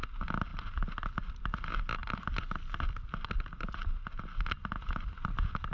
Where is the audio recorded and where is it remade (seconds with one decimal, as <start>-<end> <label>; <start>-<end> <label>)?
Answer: 0.0-5.7 recorded